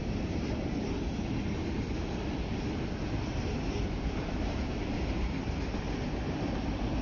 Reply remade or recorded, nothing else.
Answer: recorded